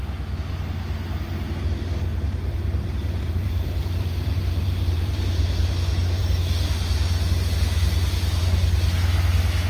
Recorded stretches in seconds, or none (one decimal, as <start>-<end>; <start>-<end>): 0.0-2.1; 5.7-9.7